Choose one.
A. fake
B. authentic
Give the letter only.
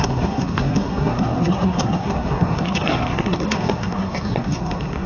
A